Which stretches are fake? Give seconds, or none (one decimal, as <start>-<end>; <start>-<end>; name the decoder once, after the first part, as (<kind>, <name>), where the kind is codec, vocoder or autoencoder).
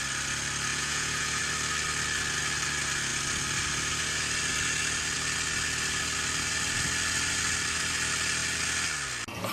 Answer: 0.7-1.4 (vocoder, Vocos)